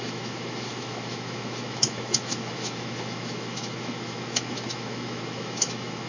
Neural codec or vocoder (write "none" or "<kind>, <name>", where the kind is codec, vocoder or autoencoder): autoencoder, DAC-VAE